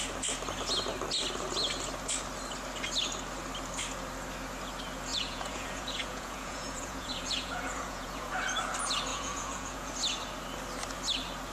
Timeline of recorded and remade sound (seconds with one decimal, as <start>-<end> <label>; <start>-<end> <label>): 0.0-5.1 recorded; 5.1-8.3 remade; 8.3-9.1 recorded; 9.1-9.9 remade; 9.9-11.5 recorded